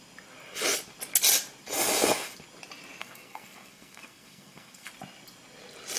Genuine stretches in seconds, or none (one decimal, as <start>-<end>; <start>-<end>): 0.0-3.0; 4.9-6.0